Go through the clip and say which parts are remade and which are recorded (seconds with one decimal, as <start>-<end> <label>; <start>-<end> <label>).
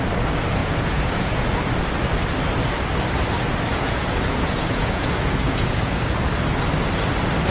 0.0-0.6 recorded; 0.6-1.5 remade; 1.5-3.7 recorded; 3.7-5.8 remade; 5.8-7.5 recorded